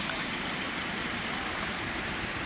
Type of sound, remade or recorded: remade